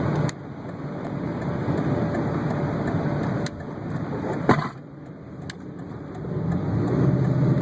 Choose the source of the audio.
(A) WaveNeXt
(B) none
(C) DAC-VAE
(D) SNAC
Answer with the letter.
B